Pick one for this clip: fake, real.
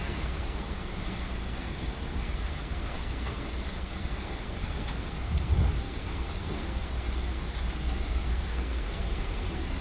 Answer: fake